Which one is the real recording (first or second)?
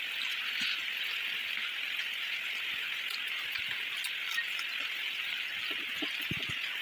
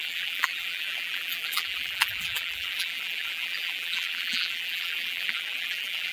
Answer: first